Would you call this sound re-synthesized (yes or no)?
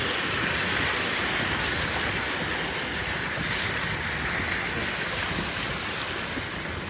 no